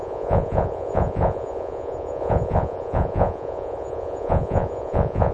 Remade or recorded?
remade